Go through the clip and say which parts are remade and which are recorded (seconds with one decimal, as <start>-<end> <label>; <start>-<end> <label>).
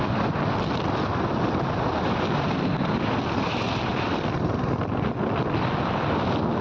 0.0-6.6 recorded